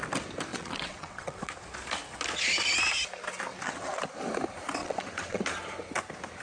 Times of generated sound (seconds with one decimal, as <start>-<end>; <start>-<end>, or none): 0.5-1.5; 3.5-4.0; 4.8-5.4